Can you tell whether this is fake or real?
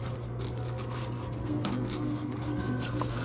fake